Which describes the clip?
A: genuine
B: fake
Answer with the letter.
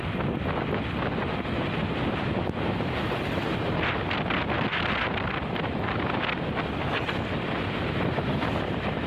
A